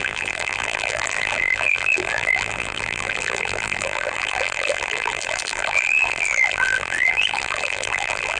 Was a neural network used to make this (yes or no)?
yes